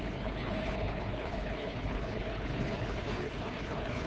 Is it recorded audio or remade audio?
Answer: remade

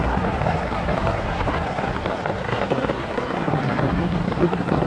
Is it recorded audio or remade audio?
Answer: remade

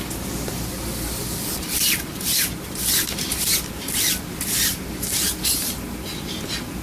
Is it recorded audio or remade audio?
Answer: recorded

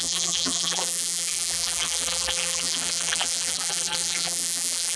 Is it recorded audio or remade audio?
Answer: remade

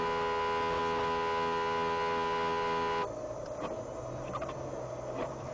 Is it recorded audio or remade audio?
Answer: recorded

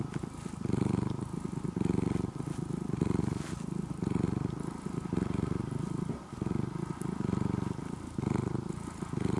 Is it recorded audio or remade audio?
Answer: recorded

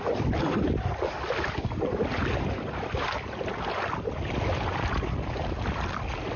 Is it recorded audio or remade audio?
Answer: recorded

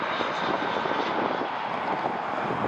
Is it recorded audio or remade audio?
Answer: recorded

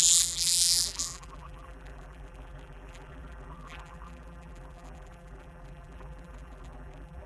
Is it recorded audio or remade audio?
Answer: remade